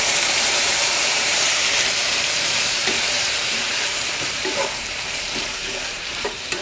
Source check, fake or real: fake